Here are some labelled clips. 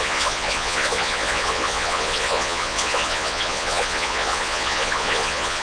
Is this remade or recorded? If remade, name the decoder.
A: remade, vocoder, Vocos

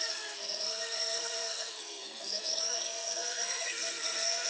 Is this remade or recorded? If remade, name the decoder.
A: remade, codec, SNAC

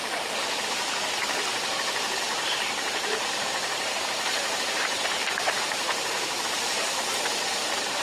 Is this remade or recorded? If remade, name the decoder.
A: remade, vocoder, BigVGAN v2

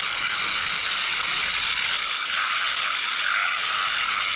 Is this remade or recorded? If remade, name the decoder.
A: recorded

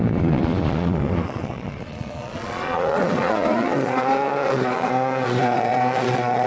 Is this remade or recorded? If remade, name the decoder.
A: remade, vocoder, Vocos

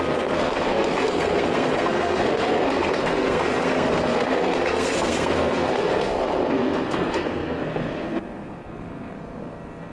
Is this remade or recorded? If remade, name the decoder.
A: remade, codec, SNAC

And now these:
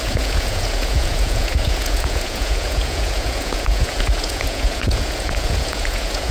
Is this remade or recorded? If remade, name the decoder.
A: remade, vocoder, Vocos